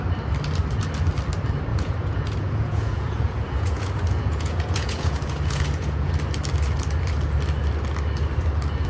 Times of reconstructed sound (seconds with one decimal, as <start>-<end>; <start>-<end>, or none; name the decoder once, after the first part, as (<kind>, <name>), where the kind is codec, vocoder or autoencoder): 1.7-6.1 (vocoder, Vocos)